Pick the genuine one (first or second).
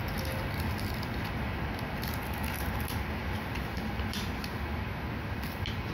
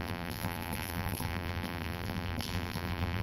first